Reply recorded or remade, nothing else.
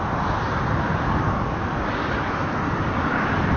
recorded